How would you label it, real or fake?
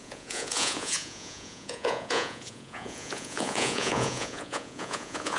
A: fake